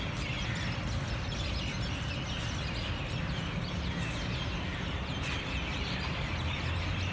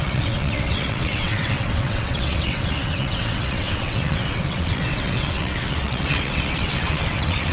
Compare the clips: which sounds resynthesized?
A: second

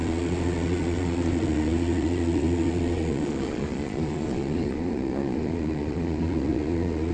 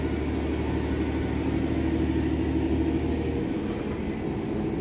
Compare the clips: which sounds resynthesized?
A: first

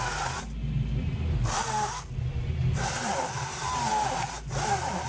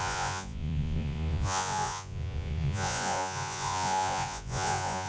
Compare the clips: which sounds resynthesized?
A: second